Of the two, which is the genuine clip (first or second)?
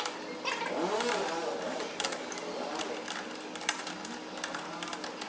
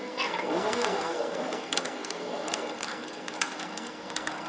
first